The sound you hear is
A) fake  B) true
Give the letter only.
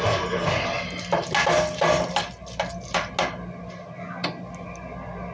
B